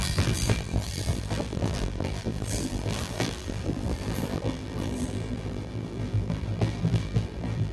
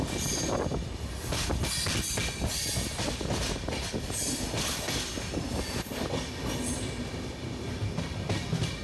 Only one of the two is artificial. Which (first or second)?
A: first